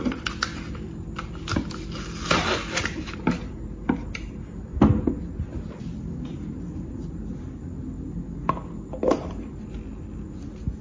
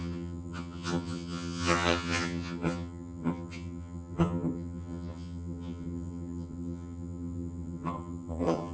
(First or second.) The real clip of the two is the first